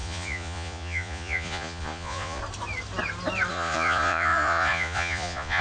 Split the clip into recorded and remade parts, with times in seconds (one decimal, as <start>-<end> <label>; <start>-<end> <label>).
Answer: 0.0-2.4 remade; 2.4-3.5 recorded; 3.5-5.6 remade